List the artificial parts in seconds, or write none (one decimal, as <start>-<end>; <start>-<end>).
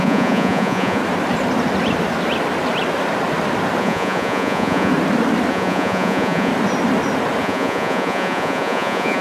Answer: 0.0-1.0; 3.8-4.9; 5.5-6.5; 7.4-9.2